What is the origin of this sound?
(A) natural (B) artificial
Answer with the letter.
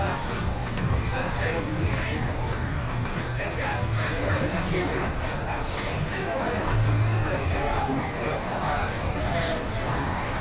B